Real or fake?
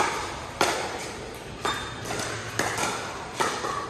real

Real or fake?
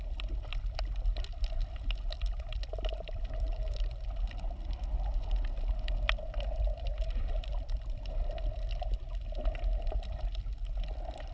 real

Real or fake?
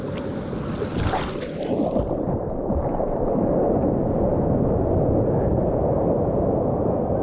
real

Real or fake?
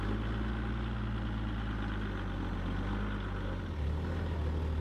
real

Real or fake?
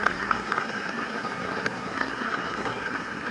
fake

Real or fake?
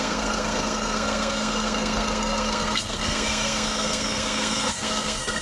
fake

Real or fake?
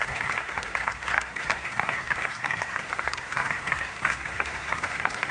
fake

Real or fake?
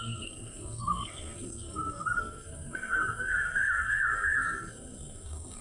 fake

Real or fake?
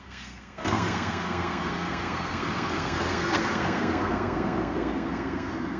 fake